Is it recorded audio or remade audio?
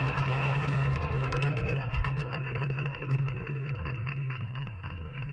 remade